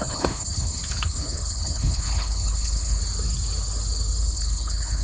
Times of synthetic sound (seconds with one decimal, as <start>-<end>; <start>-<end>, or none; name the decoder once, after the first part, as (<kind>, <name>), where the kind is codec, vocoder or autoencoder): 0.0-3.0 (codec, HILCodec); 4.2-5.0